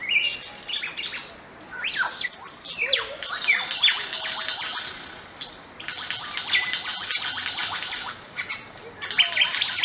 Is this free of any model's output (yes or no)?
yes